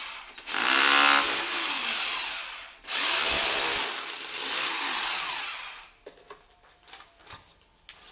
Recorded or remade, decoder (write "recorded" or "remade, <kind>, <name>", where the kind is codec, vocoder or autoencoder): recorded